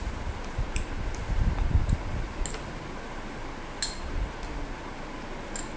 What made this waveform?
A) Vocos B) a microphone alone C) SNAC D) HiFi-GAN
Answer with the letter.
B